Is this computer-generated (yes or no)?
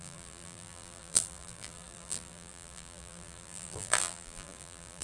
yes